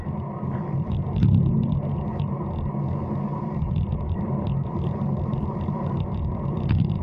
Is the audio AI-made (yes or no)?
no